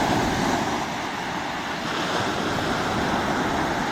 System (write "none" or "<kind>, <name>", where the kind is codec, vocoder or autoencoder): none